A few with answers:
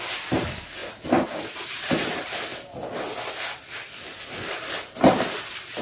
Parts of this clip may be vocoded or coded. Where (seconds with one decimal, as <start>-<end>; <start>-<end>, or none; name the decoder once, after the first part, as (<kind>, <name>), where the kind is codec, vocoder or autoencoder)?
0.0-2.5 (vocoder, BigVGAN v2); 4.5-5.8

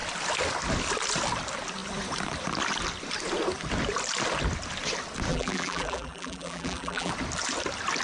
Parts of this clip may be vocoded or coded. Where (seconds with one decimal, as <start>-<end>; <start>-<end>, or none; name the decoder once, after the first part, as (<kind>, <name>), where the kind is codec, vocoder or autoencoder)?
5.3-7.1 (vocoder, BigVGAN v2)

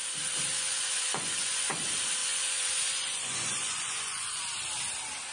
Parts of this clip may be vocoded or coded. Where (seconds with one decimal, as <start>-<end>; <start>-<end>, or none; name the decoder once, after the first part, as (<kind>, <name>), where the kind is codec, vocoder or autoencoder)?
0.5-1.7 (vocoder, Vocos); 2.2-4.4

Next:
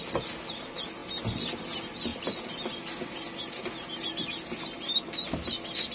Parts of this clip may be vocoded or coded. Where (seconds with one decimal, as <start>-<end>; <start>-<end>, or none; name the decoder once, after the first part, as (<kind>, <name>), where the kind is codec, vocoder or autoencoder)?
none